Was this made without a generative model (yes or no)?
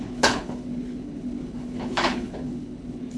no